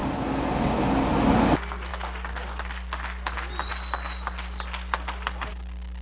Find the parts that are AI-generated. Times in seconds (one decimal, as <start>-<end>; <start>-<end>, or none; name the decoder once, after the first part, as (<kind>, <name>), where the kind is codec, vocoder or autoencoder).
none